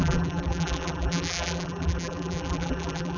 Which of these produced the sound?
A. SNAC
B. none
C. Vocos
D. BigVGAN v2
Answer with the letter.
D